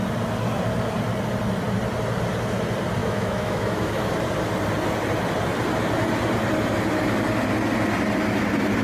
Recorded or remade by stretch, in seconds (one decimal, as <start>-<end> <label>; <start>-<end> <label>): 0.0-3.0 recorded; 3.0-4.1 remade; 4.1-8.8 recorded